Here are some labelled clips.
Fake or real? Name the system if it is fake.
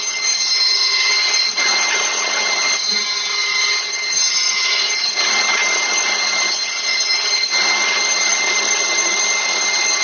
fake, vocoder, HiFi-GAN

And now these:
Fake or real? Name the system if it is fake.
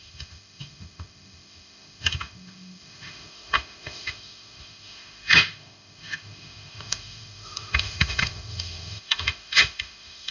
fake, autoencoder, DAC-VAE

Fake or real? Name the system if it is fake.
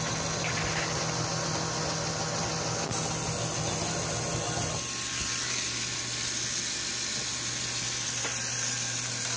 real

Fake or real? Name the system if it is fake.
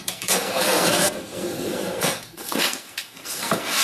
fake, codec, SNAC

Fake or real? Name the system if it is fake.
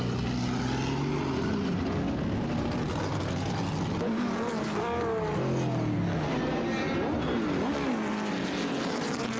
real